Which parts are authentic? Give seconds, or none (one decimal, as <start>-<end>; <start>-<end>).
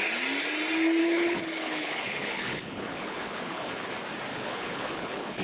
0.0-1.0; 3.9-4.3